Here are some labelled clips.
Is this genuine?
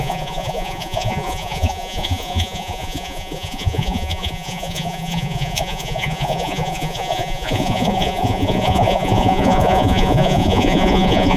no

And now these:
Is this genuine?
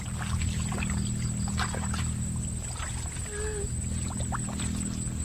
yes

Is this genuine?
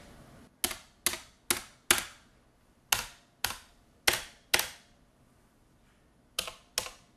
yes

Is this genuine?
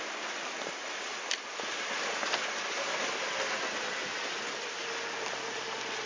yes